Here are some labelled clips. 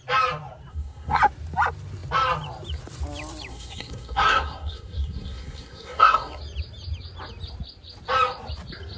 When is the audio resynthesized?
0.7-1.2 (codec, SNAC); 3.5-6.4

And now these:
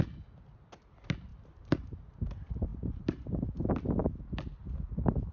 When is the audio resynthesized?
1.3-2.2 (vocoder, BigVGAN v2); 2.7-3.6

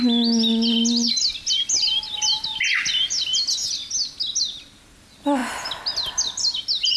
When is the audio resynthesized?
none

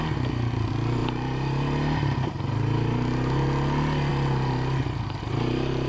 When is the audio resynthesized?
1.0-2.5 (vocoder, BigVGAN v2)